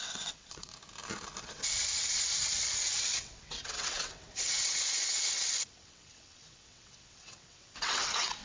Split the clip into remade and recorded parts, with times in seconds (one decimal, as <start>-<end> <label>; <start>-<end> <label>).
0.0-0.7 remade; 0.7-1.4 recorded; 1.4-8.4 remade